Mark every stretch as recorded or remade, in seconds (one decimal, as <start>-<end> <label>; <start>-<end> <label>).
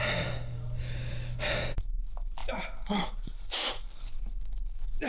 0.0-5.1 recorded